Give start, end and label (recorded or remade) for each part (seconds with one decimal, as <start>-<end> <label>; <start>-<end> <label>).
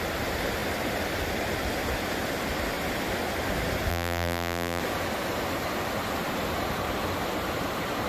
0.0-3.9 recorded; 3.9-4.8 remade; 4.8-8.1 recorded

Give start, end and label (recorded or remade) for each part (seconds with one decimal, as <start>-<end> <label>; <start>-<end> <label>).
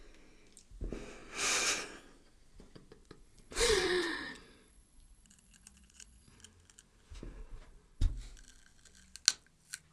0.0-3.0 recorded; 3.0-6.4 remade; 6.4-7.4 recorded; 7.4-8.1 remade; 8.1-9.9 recorded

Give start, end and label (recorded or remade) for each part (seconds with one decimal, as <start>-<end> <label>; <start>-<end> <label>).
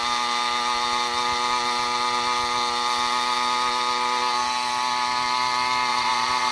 0.0-5.9 recorded; 5.9-6.5 remade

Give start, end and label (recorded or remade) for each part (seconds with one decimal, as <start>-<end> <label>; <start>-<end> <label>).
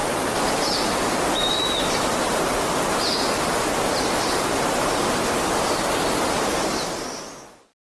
0.0-0.6 remade; 0.6-8.0 recorded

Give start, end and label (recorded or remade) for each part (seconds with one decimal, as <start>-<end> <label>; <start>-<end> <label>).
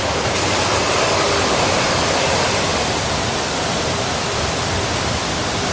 0.0-5.7 recorded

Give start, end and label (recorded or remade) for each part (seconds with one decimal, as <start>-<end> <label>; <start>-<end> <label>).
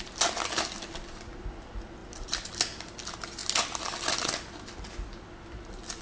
0.0-2.0 recorded; 2.0-2.5 remade; 2.5-6.0 recorded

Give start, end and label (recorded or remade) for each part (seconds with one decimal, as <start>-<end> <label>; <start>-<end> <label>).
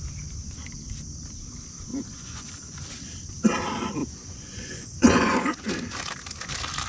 0.0-1.9 recorded; 1.9-2.5 remade; 2.5-4.0 recorded; 4.0-5.7 remade; 5.7-6.9 recorded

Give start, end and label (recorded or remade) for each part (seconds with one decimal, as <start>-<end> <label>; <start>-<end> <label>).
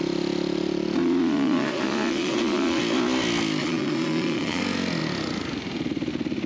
0.0-1.0 recorded; 1.0-2.8 remade; 2.8-3.6 recorded; 3.6-4.6 remade; 4.6-6.5 recorded